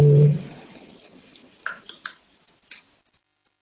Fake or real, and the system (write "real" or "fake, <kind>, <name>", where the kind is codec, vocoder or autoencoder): real